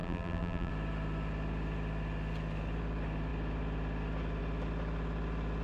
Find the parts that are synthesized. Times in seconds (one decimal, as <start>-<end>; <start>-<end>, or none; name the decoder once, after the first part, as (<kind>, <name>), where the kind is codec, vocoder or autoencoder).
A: 0.0-0.7 (vocoder, BigVGAN v2)